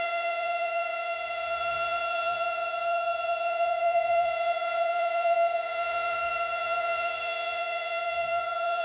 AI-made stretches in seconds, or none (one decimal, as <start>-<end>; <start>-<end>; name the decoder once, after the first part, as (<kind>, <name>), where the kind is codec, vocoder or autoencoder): 0.0-8.8 (vocoder, Vocos)